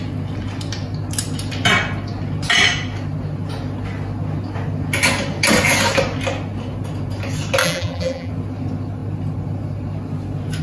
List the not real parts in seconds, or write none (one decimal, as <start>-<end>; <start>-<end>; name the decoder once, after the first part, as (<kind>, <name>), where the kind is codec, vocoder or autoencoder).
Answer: 7.6-8.3 (vocoder, BigVGAN v2)